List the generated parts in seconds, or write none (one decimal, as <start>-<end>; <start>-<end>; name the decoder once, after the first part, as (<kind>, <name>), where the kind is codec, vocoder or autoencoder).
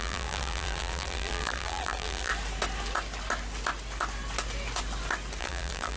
0.0-2.3 (vocoder, BigVGAN v2); 5.4-6.0